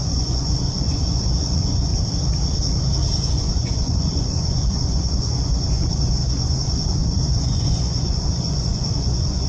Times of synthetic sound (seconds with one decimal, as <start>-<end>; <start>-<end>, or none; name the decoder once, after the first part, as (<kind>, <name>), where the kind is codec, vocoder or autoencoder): 0.0-1.9 (vocoder, Vocos); 3.3-9.5